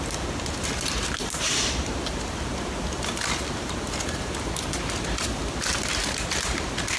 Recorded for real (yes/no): yes